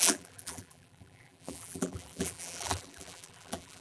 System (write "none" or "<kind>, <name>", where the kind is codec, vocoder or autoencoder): vocoder, BigVGAN v2